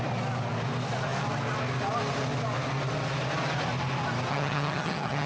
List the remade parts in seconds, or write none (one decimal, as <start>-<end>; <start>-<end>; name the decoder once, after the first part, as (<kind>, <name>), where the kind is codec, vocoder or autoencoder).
4.3-5.3 (vocoder, HiFi-GAN)